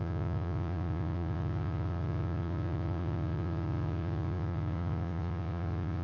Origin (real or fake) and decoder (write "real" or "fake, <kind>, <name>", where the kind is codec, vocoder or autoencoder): fake, vocoder, Vocos